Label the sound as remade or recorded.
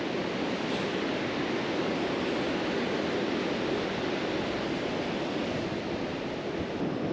recorded